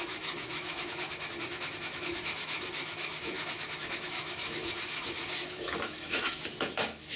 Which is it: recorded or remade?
remade